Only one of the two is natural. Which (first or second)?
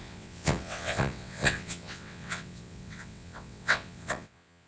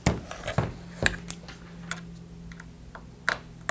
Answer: second